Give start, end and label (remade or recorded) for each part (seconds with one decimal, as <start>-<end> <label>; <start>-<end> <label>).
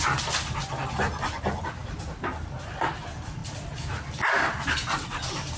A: 0.0-5.6 recorded